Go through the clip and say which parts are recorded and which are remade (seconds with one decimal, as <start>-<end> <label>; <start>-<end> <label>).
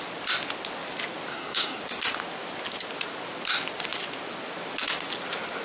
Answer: 0.0-1.3 recorded; 1.3-1.8 remade; 1.8-5.6 recorded